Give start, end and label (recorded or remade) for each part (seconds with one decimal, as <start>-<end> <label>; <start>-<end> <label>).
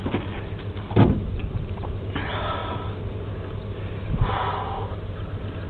0.0-5.7 recorded